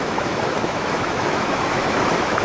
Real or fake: fake